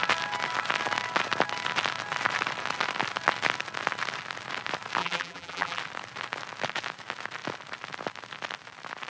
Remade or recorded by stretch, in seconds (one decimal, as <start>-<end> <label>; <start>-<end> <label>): 0.0-5.0 recorded; 5.0-5.8 remade; 5.8-9.1 recorded